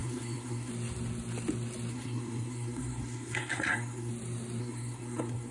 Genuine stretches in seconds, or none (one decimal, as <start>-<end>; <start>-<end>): 0.7-1.9; 4.1-4.6

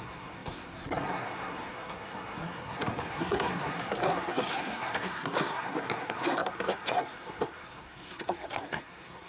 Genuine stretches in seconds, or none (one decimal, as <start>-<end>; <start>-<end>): none

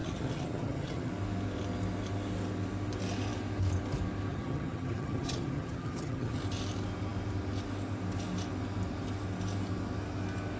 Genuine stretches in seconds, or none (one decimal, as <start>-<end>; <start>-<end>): 1.1-4.3; 6.4-10.6

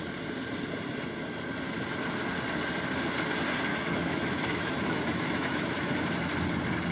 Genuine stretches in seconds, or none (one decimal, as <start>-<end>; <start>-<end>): 0.0-3.7; 6.3-6.9

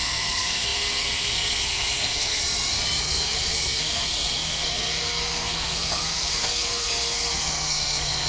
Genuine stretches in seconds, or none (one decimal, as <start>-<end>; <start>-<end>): 2.4-3.0